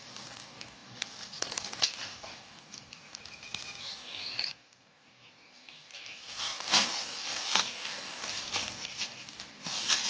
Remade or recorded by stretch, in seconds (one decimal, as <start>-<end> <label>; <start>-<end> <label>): 0.0-3.2 remade; 3.2-3.8 recorded; 3.8-10.1 remade